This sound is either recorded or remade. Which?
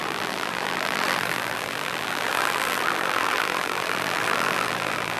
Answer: remade